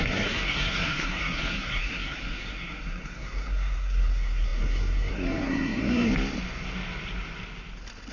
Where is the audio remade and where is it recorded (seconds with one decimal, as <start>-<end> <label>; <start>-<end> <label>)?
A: 0.0-6.1 remade; 6.1-8.1 recorded

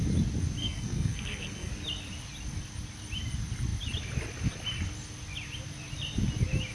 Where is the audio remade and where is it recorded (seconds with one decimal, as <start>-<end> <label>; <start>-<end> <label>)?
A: 0.0-0.6 recorded; 0.6-1.7 remade; 1.7-6.7 recorded

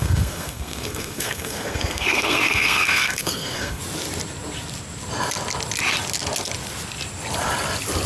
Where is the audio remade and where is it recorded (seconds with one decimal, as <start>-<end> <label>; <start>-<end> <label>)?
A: 0.0-3.8 remade; 3.8-8.1 recorded

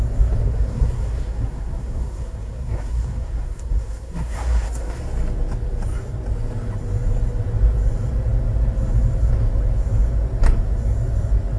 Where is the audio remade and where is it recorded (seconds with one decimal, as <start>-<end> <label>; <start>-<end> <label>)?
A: 0.0-0.4 recorded; 0.4-5.0 remade; 5.0-11.6 recorded

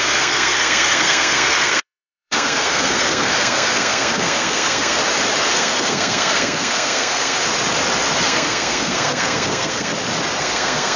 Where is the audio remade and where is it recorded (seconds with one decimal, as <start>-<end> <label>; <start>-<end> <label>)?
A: 0.0-5.0 remade; 5.0-5.5 recorded; 5.5-7.5 remade; 7.5-8.2 recorded; 8.2-9.9 remade; 9.9-10.4 recorded; 10.4-11.0 remade